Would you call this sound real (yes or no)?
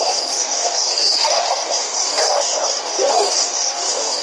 no